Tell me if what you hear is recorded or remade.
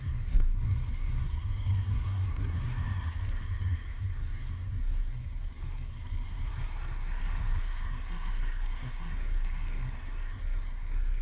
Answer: remade